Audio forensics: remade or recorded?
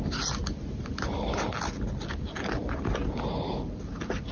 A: recorded